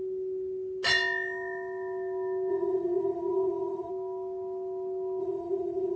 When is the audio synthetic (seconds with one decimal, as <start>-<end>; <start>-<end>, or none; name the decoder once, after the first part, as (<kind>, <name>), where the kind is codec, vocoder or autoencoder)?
2.5-3.9 (vocoder, Vocos); 5.2-6.0